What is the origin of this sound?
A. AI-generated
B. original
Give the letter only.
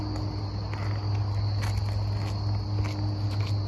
B